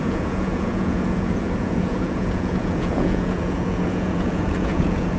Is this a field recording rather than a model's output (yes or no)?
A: no